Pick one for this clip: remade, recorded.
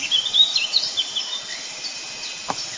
recorded